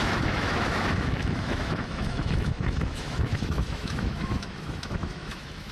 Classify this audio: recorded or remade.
remade